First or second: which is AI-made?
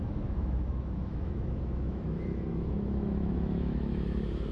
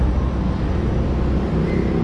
first